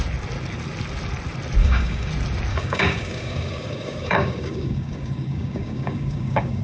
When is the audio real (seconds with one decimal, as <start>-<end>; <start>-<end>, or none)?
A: 0.0-1.6; 2.1-2.5